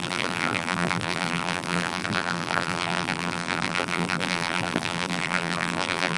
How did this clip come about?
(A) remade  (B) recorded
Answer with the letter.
A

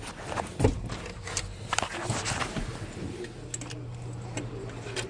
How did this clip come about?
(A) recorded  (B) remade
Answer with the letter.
A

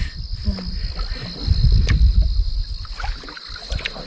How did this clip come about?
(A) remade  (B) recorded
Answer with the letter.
B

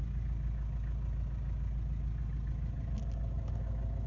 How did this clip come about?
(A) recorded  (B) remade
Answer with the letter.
A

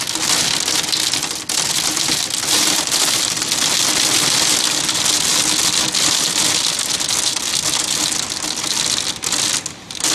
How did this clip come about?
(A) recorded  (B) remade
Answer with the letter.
A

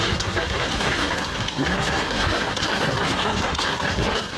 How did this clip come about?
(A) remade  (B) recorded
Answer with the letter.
A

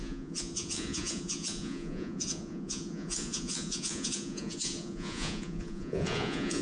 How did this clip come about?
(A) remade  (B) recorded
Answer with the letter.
A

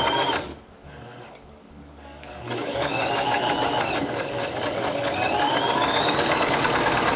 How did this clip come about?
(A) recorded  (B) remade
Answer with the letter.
B